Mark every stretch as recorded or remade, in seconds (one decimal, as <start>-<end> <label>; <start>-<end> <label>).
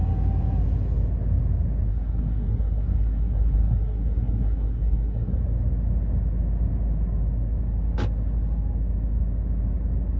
0.0-1.9 recorded; 1.9-5.4 remade; 5.4-10.2 recorded